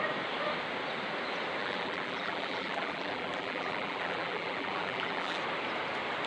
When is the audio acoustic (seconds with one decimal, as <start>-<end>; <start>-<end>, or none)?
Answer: 0.0-1.6; 5.4-6.3